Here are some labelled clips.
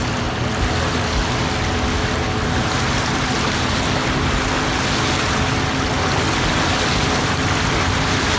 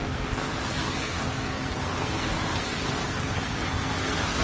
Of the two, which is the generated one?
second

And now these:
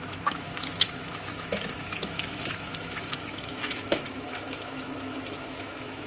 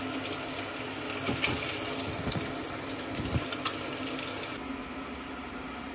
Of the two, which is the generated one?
first